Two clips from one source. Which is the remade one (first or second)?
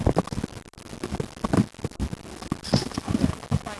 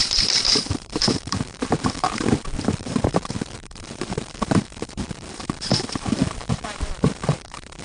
second